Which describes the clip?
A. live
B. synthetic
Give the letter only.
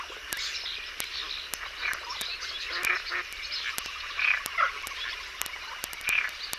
A